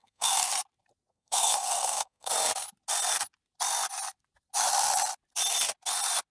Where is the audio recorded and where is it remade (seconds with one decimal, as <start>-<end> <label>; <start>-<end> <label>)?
0.0-0.5 remade; 0.5-1.1 recorded; 1.1-2.3 remade; 2.3-6.3 recorded